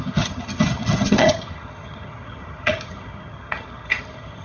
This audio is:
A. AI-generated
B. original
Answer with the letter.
A